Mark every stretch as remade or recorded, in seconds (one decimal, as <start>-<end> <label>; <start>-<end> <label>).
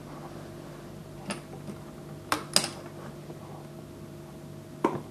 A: 0.0-5.1 recorded